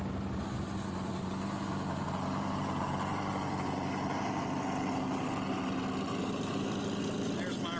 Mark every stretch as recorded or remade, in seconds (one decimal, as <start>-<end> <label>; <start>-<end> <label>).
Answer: 0.0-7.8 recorded